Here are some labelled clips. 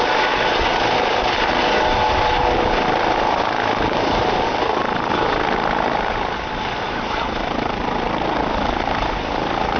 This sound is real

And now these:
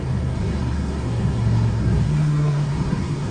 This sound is fake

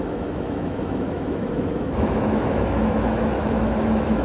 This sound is fake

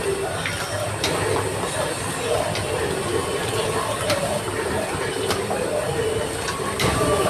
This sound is real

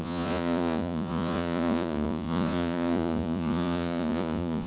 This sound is fake